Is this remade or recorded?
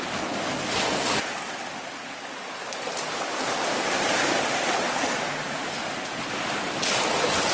recorded